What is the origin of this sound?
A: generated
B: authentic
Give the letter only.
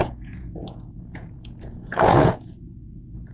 A